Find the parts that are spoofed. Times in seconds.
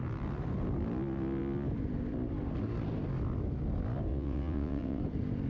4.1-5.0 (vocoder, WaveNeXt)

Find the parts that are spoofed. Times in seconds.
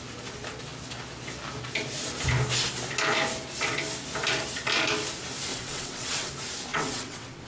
5.5-6.3 (vocoder, WaveNeXt); 6.7-7.5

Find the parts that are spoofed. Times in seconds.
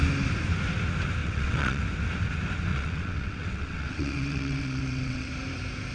1.2-1.8 (vocoder, WaveNeXt); 2.7-5.3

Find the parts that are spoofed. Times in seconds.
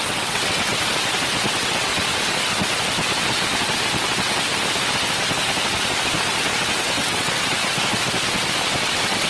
0.0-0.7 (vocoder, WaveNeXt); 1.5-1.9; 6.8-7.6; 8.8-9.3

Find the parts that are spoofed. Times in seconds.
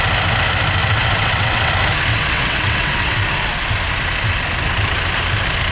0.8-1.7 (vocoder, WaveNeXt); 2.1-3.2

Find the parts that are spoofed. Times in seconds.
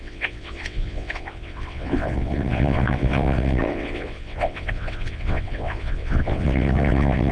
0.0-7.3 (vocoder, WaveNeXt)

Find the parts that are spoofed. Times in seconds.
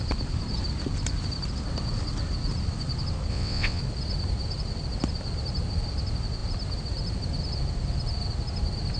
3.3-3.8 (vocoder, WaveNeXt)